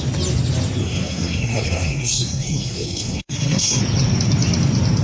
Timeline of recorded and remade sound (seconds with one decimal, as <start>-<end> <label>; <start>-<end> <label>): 0.0-0.8 recorded; 0.8-3.8 remade; 3.8-5.0 recorded